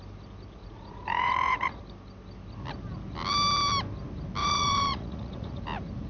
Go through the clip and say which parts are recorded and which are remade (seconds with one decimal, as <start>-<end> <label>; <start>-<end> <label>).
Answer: 0.0-0.6 recorded; 0.6-1.8 remade; 1.8-4.4 recorded; 4.4-5.6 remade; 5.6-6.1 recorded